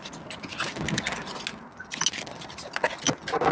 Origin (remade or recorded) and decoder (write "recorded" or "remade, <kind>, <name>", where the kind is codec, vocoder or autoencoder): recorded